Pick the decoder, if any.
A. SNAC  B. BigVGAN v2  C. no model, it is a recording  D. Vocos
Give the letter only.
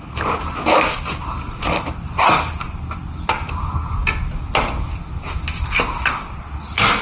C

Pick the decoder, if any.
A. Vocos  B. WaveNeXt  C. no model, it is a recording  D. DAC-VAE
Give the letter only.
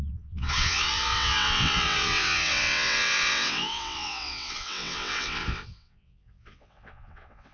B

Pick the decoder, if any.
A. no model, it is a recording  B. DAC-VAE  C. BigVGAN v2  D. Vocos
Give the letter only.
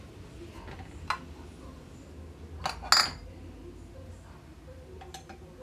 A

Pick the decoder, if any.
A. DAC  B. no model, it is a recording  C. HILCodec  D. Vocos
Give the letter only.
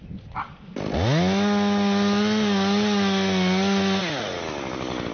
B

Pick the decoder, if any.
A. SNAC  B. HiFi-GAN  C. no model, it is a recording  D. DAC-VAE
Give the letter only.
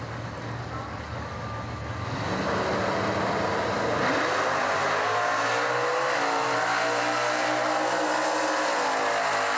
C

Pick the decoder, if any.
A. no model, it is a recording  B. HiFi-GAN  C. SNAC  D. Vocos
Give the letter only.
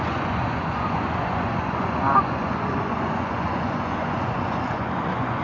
D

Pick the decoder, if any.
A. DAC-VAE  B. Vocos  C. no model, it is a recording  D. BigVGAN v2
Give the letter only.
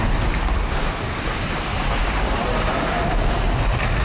C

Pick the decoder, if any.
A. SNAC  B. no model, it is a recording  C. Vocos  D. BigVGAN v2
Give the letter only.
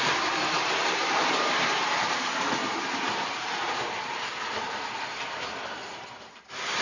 D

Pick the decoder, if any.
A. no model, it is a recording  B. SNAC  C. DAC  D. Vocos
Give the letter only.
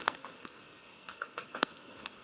B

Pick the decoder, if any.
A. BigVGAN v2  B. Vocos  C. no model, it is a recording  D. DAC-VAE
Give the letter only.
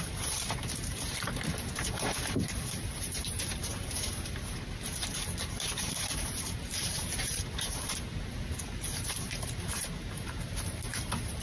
A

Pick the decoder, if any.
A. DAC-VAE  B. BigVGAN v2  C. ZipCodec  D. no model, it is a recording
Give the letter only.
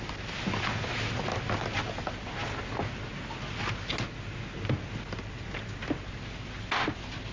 D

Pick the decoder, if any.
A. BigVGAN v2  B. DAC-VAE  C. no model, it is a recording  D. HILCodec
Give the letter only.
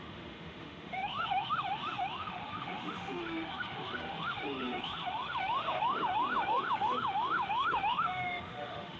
B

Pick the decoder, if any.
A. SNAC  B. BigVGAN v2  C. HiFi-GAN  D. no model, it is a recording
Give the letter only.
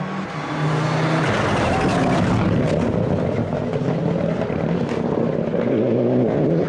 D